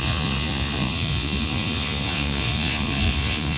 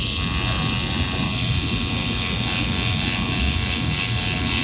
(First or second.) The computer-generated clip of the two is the first